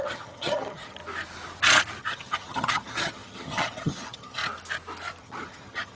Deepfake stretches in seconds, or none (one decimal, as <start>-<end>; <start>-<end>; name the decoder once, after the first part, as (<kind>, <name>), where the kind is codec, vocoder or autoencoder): 0.0-1.0 (vocoder, HiFi-GAN); 2.0-4.4; 5.2-5.9